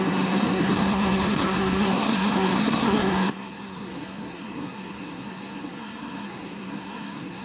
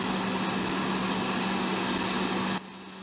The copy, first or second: first